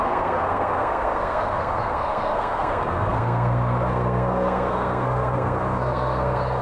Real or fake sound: fake